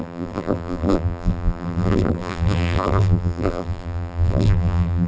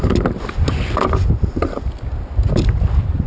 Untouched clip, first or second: second